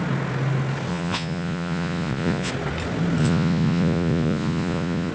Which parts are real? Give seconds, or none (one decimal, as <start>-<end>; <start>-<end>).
0.0-0.9; 2.5-3.2